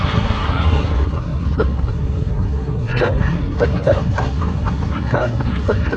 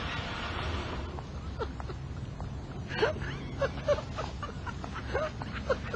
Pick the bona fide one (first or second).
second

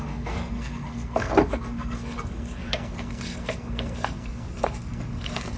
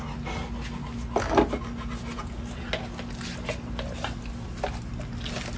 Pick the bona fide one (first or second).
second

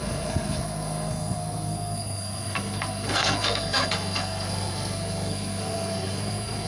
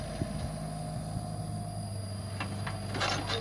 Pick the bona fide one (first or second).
second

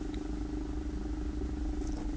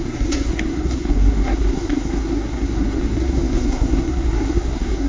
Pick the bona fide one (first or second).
first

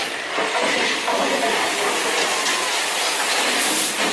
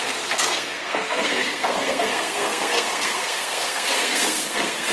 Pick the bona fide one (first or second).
first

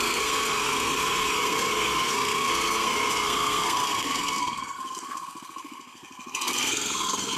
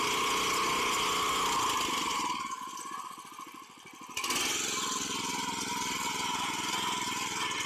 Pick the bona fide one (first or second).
second